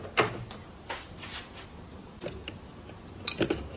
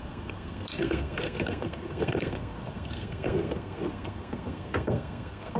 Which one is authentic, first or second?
first